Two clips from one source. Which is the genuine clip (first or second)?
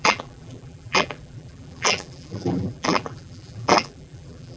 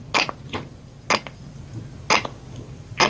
second